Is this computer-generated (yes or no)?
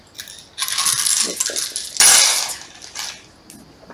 no